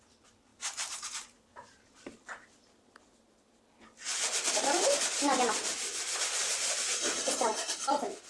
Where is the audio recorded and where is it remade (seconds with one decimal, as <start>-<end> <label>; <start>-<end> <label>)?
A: 0.0-0.5 recorded; 0.5-3.6 remade; 3.6-6.4 recorded; 6.4-7.7 remade; 7.7-8.3 recorded